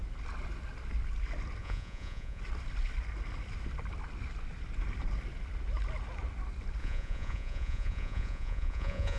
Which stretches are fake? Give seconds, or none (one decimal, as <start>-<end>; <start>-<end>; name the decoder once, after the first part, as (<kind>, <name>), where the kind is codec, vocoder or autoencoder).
1.6-2.4 (vocoder, Vocos); 6.8-9.2